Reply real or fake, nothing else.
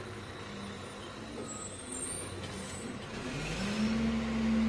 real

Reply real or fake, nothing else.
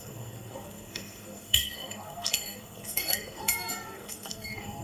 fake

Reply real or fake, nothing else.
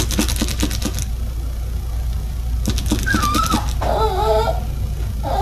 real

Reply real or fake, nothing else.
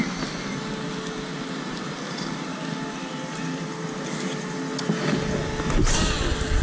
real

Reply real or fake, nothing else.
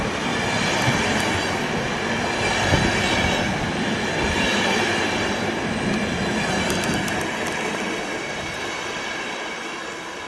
real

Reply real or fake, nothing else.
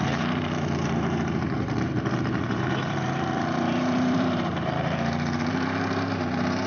fake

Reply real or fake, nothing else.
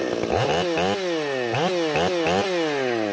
real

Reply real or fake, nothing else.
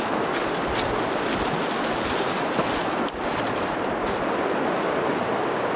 real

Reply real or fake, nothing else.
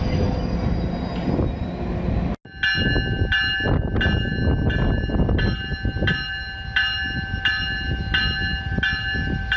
real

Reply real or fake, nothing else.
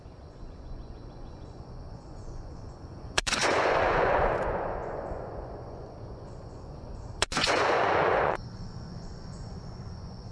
fake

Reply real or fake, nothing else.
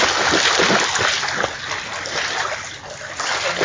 real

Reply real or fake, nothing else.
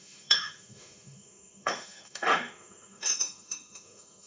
fake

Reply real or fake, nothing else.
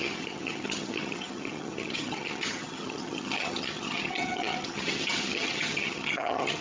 fake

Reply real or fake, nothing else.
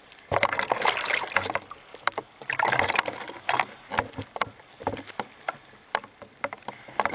real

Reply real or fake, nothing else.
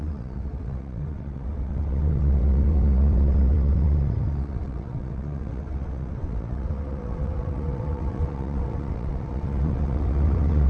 fake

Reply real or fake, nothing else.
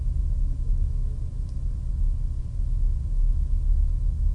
real